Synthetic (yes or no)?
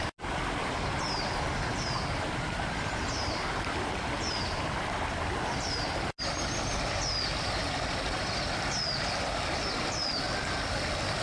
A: no